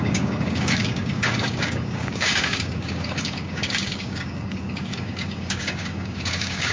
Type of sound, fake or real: fake